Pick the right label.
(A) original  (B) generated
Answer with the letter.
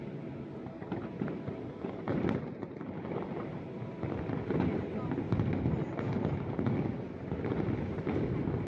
A